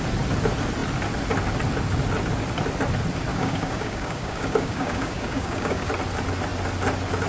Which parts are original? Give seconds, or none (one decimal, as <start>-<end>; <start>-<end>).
0.0-3.3; 5.9-7.3